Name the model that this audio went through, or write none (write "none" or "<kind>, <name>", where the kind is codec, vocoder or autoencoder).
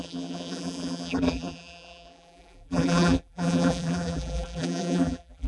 vocoder, BigVGAN v2